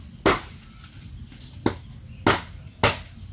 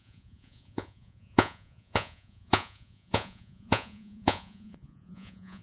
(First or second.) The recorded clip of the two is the first